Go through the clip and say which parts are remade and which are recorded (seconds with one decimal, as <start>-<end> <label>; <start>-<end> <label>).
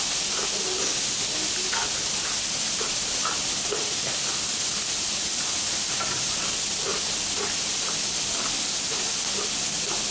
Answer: 0.0-1.8 recorded; 1.8-6.4 remade; 6.4-10.1 recorded